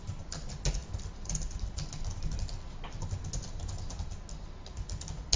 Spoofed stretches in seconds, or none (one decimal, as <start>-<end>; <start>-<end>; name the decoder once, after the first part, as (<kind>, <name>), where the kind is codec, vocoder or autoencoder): none